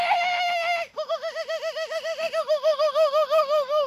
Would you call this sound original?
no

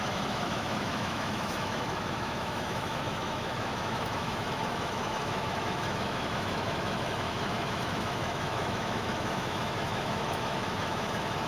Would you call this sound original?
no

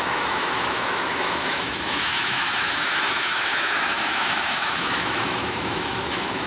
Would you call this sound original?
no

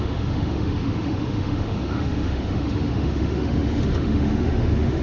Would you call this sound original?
no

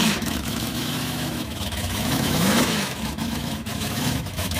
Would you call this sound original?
no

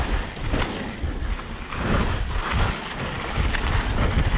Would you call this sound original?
yes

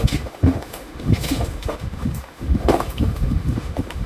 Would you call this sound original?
no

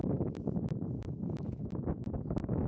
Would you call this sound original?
no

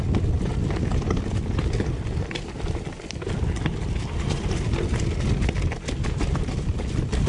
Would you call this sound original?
yes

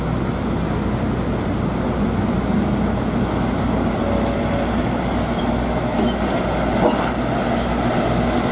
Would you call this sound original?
yes